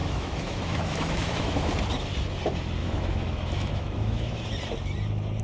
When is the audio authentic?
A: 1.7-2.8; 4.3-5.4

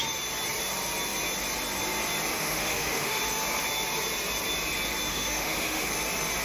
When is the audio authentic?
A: 0.0-2.4; 3.2-5.1; 5.9-6.4

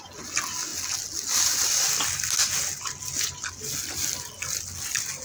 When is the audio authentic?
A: 0.0-5.2

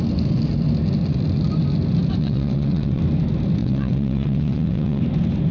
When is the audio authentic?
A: 0.0-2.2; 3.0-3.6; 5.0-5.5

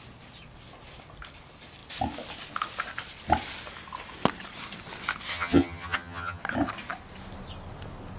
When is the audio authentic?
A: 0.0-5.3; 6.4-8.2

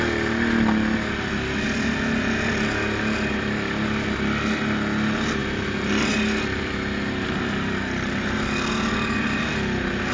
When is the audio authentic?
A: 0.0-10.1